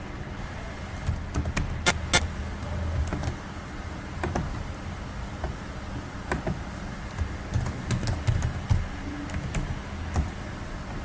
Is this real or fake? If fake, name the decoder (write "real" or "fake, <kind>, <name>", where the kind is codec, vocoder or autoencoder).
real